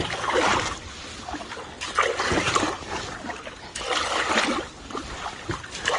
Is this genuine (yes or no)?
yes